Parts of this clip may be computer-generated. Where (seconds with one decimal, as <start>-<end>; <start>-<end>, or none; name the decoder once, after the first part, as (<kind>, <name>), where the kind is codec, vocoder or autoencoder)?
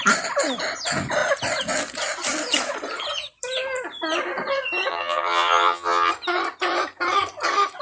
4.9-6.1 (vocoder, HiFi-GAN)